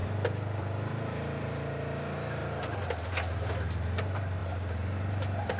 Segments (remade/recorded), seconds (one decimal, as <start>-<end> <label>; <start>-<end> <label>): 0.0-2.4 remade; 2.4-3.1 recorded; 3.1-5.6 remade